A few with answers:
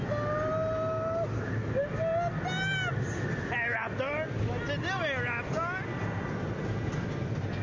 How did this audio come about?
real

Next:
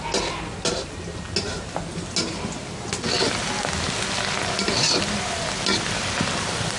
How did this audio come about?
real